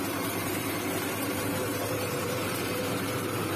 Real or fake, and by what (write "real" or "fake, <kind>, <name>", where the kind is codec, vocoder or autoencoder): fake, vocoder, BigVGAN v2